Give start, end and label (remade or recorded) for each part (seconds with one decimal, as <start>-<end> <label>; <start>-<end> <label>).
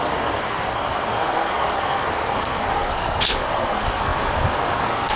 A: 0.0-5.2 remade